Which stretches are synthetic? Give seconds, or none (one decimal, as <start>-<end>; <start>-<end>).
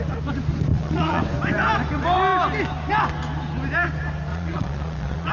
0.7-1.2; 4.3-5.3